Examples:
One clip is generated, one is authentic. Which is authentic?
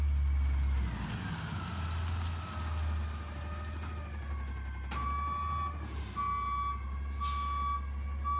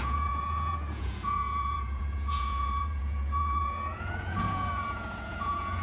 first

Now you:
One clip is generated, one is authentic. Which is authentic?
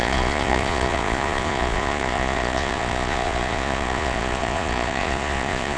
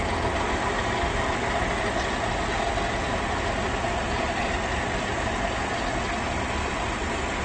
second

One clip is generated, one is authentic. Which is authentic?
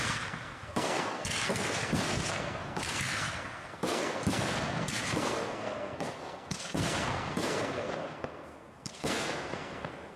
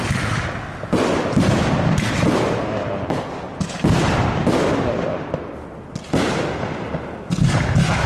second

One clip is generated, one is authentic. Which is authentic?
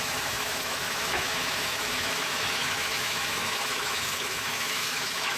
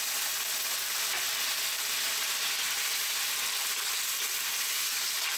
second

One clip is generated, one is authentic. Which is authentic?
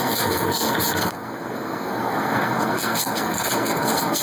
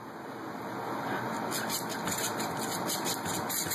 second